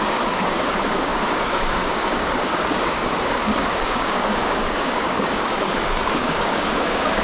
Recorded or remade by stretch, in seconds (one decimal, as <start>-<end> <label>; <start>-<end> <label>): 0.0-7.2 remade